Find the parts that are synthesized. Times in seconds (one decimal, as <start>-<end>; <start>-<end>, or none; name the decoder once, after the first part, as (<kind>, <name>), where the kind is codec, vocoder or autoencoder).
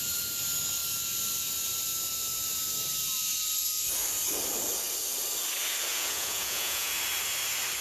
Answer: 5.9-6.9 (vocoder, Vocos)